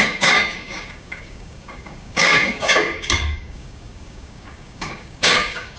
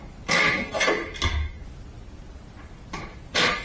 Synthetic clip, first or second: first